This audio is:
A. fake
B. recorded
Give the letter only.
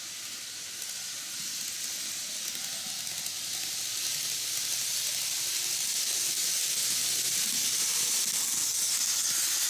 B